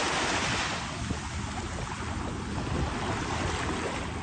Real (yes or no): yes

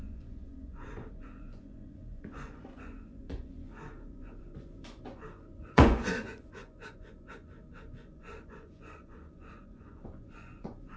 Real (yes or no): no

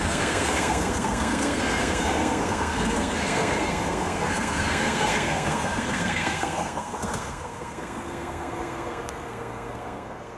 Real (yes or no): no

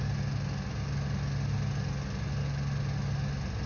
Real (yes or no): yes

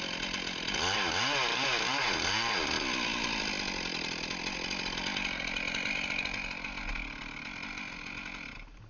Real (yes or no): yes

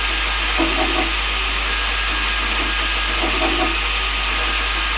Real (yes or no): yes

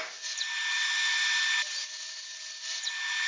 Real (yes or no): yes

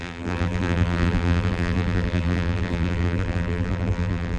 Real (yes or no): no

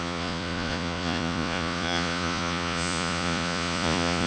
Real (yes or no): no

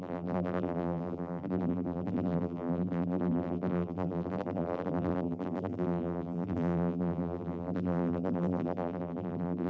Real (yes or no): no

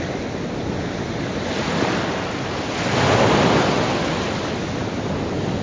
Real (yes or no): yes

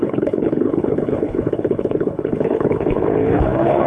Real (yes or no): no